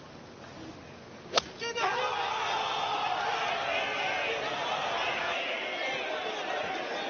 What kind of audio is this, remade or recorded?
recorded